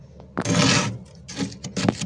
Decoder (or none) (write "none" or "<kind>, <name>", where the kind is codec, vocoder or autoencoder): none